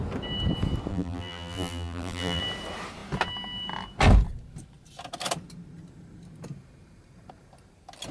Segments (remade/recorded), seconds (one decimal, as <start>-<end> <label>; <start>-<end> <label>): 0.0-0.9 recorded; 0.9-2.4 remade; 2.4-8.1 recorded